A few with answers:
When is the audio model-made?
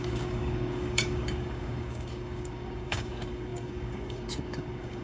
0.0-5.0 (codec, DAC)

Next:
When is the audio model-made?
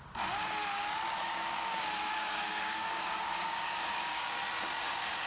1.2-4.4 (codec, DAC)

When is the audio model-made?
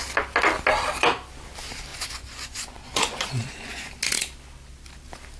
1.9-3.9 (vocoder, Vocos)